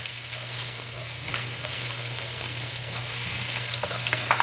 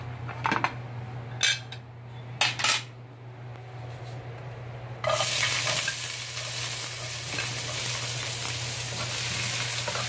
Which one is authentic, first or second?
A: second